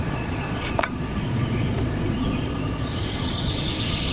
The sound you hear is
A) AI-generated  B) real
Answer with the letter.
A